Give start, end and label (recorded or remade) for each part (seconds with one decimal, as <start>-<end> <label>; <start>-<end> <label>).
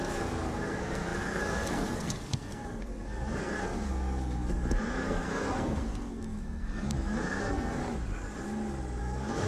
0.0-7.8 remade; 7.8-9.0 recorded; 9.0-9.5 remade